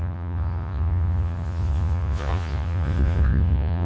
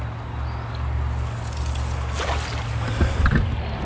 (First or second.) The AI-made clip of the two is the first